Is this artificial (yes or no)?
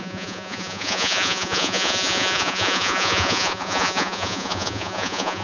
yes